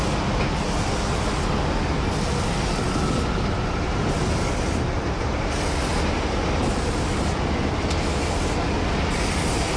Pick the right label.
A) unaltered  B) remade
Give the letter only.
A